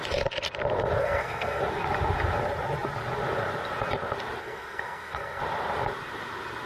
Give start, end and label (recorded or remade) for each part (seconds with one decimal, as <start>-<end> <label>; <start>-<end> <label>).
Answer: 0.0-1.0 recorded; 1.0-1.6 remade; 1.6-4.4 recorded; 4.4-5.4 remade; 5.4-6.7 recorded